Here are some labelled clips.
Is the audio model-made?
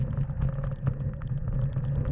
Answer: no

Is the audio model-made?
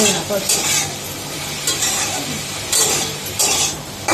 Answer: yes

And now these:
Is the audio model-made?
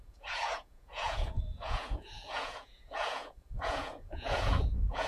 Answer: yes